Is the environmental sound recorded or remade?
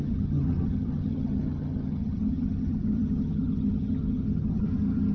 remade